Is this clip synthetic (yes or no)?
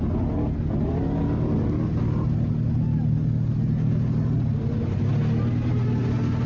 no